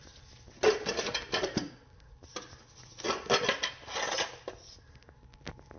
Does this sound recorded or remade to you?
recorded